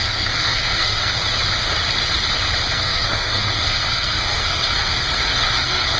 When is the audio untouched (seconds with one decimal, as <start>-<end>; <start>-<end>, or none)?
1.2-2.7